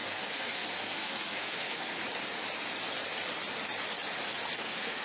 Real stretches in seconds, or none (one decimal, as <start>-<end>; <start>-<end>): 2.0-4.6

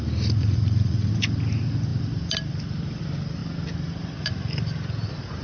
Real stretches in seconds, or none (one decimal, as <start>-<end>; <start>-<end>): 0.0-0.4; 1.1-5.4

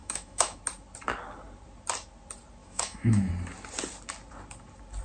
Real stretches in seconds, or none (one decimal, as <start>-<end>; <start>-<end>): 0.6-2.6; 3.3-5.0

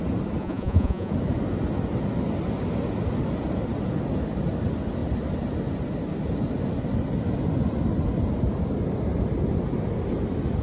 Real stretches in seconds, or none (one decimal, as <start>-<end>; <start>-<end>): 0.0-0.4; 1.1-10.6

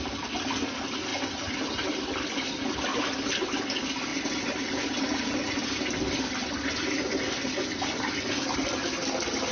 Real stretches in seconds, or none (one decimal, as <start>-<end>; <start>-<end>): 0.0-4.1

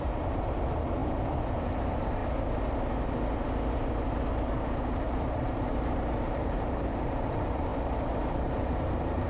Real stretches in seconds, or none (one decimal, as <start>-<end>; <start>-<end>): 1.0-1.6; 2.2-4.8

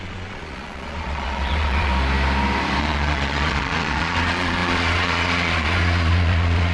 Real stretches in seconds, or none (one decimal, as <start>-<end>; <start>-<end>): 1.9-2.8

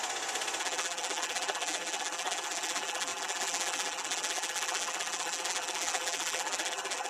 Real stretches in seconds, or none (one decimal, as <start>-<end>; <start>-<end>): 0.0-0.6